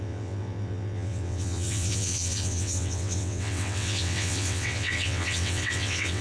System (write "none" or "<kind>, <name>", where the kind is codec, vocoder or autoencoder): vocoder, WaveNeXt